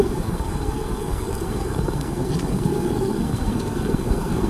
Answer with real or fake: fake